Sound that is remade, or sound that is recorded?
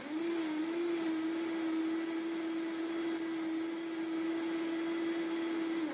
recorded